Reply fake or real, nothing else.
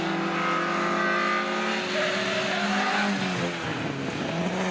real